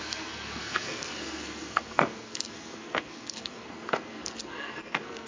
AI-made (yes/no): yes